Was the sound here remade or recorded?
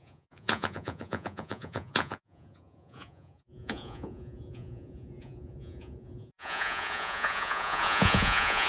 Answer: remade